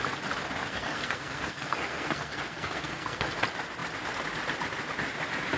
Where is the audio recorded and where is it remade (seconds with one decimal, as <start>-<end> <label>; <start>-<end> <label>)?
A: 0.0-0.6 recorded; 0.6-3.3 remade; 3.3-5.6 recorded